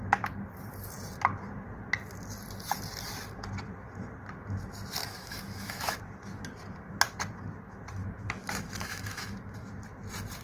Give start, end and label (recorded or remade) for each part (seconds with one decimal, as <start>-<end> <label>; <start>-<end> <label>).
0.0-5.0 recorded; 5.0-6.0 remade; 6.0-8.0 recorded; 8.0-9.7 remade; 9.7-10.4 recorded